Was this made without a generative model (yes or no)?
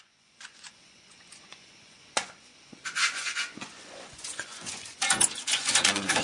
no